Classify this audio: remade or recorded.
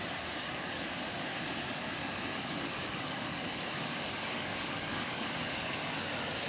remade